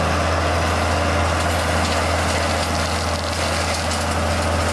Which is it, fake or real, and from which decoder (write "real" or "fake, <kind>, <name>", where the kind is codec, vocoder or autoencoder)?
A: real